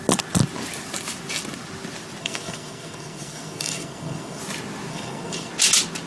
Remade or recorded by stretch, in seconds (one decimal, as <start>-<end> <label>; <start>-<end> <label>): 0.0-2.2 recorded; 2.2-4.4 remade; 4.4-4.9 recorded; 4.9-5.5 remade; 5.5-6.1 recorded